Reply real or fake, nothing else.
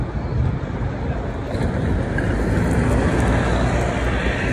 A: real